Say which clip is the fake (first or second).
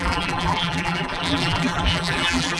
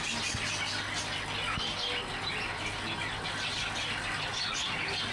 first